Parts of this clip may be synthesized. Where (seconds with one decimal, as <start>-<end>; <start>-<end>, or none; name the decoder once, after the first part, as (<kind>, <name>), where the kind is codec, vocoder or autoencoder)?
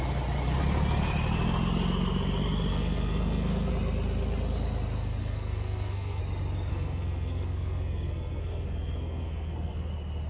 2.7-3.7 (codec, SNAC); 5.2-6.2; 6.7-9.9